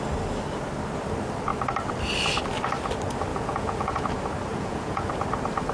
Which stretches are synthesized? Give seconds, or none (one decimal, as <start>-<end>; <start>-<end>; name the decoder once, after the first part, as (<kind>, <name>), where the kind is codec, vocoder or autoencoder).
3.3-4.0 (vocoder, Vocos); 4.5-5.1

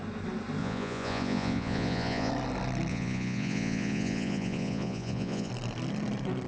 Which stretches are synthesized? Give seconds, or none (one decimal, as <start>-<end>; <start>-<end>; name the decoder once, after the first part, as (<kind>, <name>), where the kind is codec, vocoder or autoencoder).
0.6-2.3 (vocoder, Vocos); 2.9-5.5